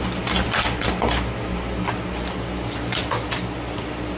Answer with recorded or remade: recorded